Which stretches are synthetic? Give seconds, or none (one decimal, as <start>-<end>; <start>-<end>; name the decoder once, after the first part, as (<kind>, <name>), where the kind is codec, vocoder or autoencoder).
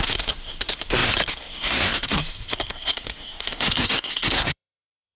0.0-5.2 (codec, SNAC)